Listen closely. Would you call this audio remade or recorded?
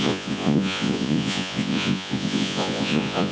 remade